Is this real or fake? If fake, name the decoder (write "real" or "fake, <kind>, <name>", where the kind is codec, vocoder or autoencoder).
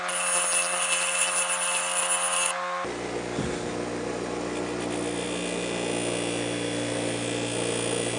real